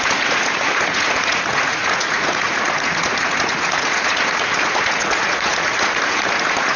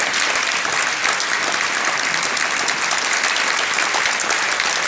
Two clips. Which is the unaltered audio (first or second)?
second